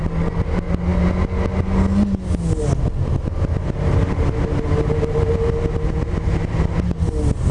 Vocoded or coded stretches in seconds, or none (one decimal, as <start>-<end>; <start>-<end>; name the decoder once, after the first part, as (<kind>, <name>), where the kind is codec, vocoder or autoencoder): none

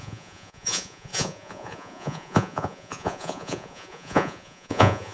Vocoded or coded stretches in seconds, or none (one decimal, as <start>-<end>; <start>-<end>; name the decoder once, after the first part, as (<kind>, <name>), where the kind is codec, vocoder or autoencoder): 0.0-5.1 (vocoder, Vocos)

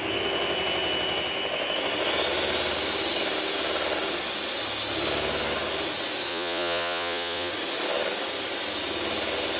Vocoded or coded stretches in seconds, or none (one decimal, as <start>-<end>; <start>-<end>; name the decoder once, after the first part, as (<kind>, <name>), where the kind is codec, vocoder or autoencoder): 6.3-7.5 (vocoder, Vocos)

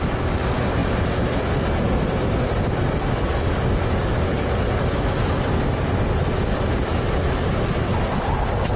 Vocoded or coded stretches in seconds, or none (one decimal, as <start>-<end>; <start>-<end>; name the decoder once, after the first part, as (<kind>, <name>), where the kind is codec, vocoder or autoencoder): none

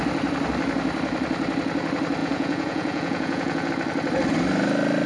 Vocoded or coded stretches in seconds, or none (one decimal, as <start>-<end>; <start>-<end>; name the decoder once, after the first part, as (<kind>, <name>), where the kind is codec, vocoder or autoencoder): 2.2-3.7 (vocoder, Vocos)

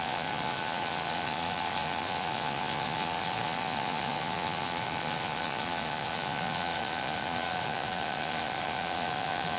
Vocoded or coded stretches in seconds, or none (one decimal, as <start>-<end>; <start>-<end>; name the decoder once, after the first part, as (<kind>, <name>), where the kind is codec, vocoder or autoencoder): 0.0-9.6 (vocoder, Vocos)